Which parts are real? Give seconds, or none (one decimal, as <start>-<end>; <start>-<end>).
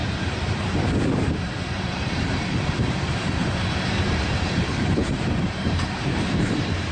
none